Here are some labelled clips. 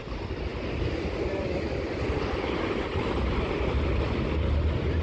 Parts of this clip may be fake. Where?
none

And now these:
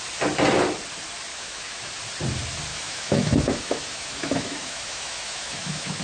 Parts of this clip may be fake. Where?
1.3-1.9 (autoencoder, DAC-VAE); 2.7-6.0

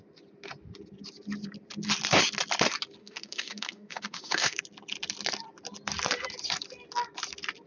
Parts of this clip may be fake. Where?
3.0-4.6 (autoencoder, DAC-VAE)

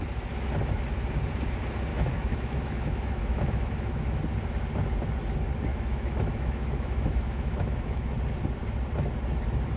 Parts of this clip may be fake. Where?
1.9-4.2 (autoencoder, DAC-VAE); 5.7-8.1

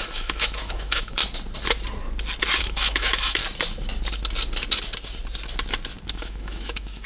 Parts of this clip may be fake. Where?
0.0-1.2 (autoencoder, DAC-VAE); 2.6-3.4; 6.1-7.1

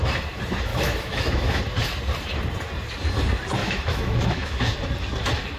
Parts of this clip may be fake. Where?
0.7-1.6 (autoencoder, DAC-VAE); 3.6-4.7

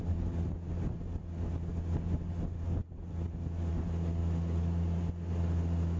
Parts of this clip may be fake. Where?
none